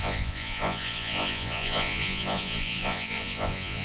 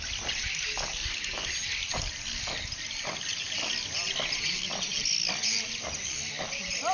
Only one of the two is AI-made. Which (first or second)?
first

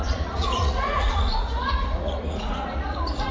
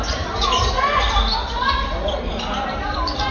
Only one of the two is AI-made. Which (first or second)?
first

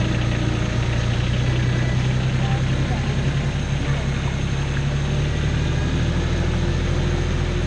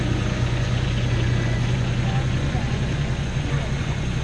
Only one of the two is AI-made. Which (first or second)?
second